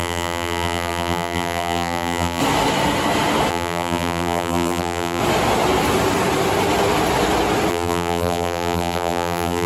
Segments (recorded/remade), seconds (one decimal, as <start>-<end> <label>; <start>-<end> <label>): 0.0-2.4 remade; 2.4-3.5 recorded; 3.5-5.2 remade; 5.2-7.7 recorded; 7.7-9.7 remade

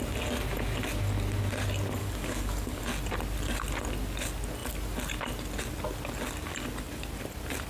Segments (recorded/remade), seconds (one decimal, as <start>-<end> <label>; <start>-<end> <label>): 0.0-2.0 recorded; 2.0-2.8 remade; 2.8-7.7 recorded

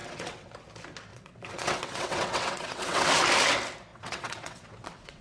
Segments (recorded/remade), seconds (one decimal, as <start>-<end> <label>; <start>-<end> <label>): 0.0-0.5 remade; 0.5-1.1 recorded; 1.1-3.1 remade; 3.1-3.9 recorded; 3.9-5.2 remade

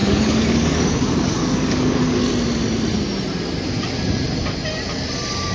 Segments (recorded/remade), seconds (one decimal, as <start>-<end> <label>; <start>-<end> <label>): 0.0-2.3 remade; 2.3-5.5 recorded

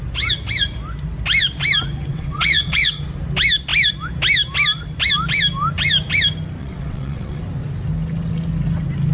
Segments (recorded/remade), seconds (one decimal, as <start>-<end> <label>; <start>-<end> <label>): 0.0-2.1 recorded; 2.1-3.0 remade; 3.0-6.6 recorded; 6.6-7.4 remade; 7.4-9.1 recorded

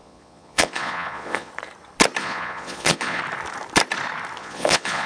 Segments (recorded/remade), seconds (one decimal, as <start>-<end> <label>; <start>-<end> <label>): 0.0-1.5 remade; 1.5-2.2 recorded; 2.2-3.2 remade; 3.2-4.4 recorded; 4.4-5.1 remade